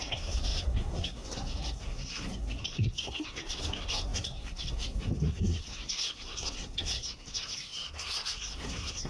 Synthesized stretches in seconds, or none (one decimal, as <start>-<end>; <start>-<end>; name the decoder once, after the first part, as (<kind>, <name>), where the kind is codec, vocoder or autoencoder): 0.0-9.1 (codec, SNAC)